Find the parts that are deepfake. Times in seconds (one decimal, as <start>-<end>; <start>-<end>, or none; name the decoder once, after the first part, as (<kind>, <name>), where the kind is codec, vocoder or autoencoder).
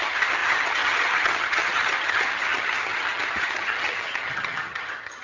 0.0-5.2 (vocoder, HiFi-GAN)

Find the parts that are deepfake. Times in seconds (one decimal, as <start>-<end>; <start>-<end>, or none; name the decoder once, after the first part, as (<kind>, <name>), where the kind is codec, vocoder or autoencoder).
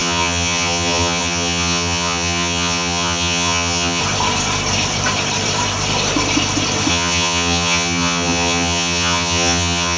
0.0-4.0 (vocoder, HiFi-GAN); 6.9-10.0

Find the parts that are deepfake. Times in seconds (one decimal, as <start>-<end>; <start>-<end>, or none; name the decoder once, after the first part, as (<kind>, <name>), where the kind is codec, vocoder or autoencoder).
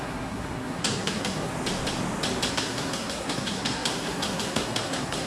0.0-1.5 (codec, SNAC); 2.5-5.3